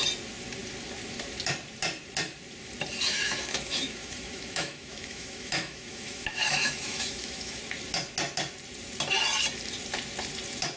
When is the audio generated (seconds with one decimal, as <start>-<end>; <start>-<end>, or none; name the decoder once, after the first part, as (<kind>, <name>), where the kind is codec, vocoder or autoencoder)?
3.1-7.6 (autoencoder, DAC-VAE)